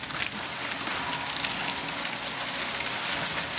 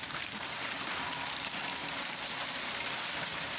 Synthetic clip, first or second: second